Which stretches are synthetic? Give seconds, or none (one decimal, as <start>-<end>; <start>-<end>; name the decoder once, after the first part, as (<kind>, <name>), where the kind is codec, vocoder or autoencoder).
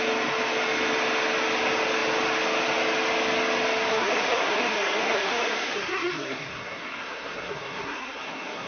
3.9-8.7 (codec, SNAC)